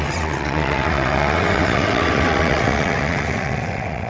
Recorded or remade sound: remade